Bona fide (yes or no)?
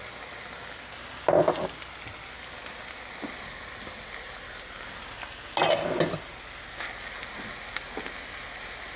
yes